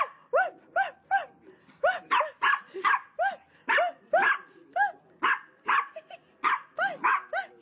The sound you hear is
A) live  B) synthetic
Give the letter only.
A